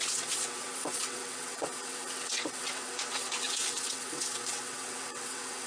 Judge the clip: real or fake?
fake